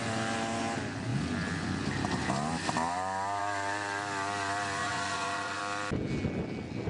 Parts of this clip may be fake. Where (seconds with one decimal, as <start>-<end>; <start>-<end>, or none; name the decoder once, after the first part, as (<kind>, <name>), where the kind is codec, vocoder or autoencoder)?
4.8-5.6 (vocoder, Vocos)